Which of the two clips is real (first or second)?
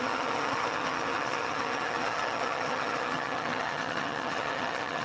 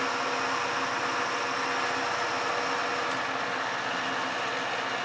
second